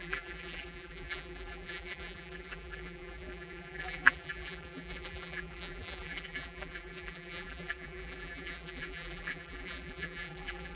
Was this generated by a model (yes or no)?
yes